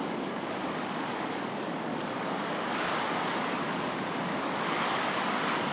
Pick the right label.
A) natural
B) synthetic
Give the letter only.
B